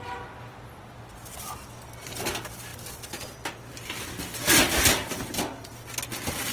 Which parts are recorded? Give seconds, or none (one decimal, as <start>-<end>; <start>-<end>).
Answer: 0.0-2.7; 3.3-6.5